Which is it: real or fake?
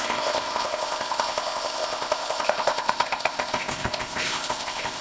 fake